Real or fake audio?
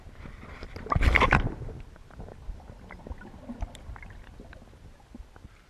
real